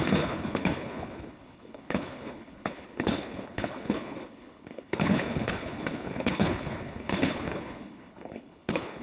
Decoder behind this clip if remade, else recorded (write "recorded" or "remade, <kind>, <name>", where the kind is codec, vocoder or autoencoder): remade, codec, HILCodec